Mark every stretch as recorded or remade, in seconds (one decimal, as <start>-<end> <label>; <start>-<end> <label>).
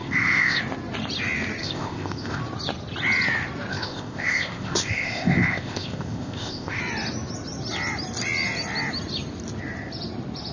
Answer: 0.0-0.6 remade; 0.6-1.6 recorded; 1.6-2.4 remade; 2.4-3.7 recorded; 3.7-6.8 remade; 6.8-10.5 recorded